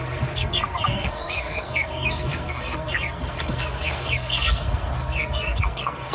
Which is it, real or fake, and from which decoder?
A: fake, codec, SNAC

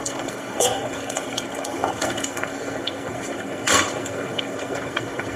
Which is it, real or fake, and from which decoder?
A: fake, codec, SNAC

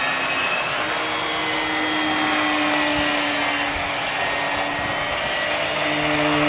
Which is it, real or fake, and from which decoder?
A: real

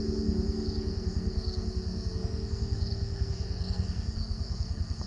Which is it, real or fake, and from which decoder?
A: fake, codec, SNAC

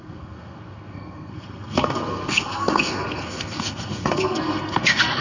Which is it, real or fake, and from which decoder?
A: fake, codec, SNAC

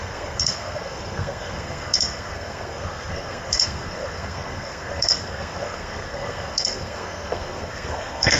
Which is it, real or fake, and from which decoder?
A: fake, codec, SNAC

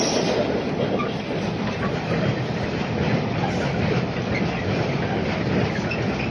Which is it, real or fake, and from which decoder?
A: real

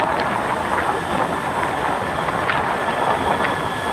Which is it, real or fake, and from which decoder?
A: real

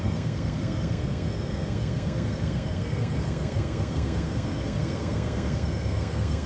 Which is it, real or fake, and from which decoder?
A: fake, codec, SNAC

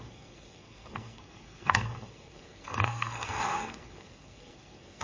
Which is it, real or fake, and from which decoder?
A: fake, codec, SNAC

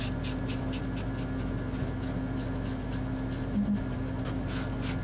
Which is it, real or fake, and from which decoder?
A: real